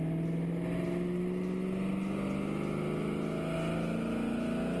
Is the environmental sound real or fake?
real